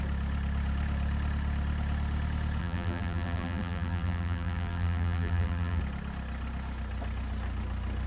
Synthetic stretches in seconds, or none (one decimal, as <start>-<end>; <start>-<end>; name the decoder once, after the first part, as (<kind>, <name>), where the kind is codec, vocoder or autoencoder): 2.6-5.8 (vocoder, BigVGAN v2)